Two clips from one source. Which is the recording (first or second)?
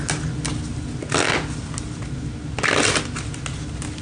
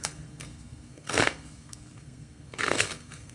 first